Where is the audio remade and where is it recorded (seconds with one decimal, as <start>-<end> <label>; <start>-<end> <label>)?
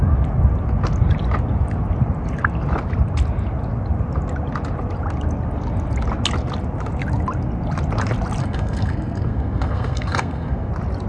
0.0-8.4 recorded; 8.4-10.7 remade; 10.7-11.1 recorded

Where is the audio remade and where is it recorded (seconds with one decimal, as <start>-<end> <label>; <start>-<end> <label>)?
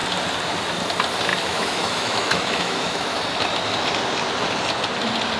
0.0-1.3 recorded; 1.3-3.2 remade; 3.2-5.4 recorded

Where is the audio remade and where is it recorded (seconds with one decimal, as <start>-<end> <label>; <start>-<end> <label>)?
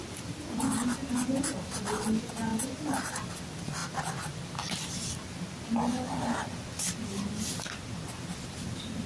0.0-1.0 recorded; 1.0-1.7 remade; 1.7-2.5 recorded; 2.5-3.3 remade; 3.3-9.1 recorded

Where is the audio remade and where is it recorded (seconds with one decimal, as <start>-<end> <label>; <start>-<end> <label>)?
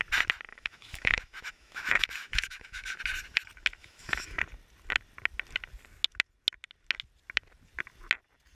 0.0-0.5 recorded; 0.5-3.0 remade; 3.0-3.8 recorded; 3.8-4.4 remade; 4.4-8.5 recorded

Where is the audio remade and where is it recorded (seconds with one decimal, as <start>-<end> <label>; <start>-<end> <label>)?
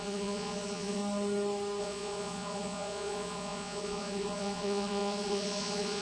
0.0-1.0 remade; 1.0-1.8 recorded; 1.8-6.0 remade